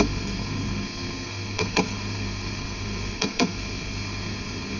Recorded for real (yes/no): no